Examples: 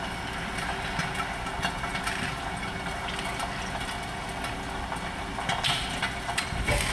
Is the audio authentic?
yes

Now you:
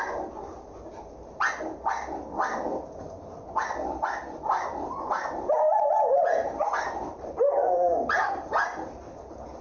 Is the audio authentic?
yes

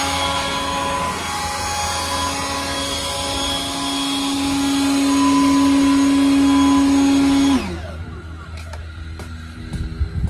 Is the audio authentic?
yes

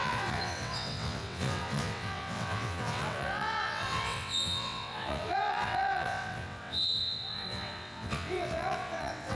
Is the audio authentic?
no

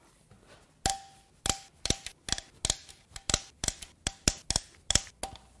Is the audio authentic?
yes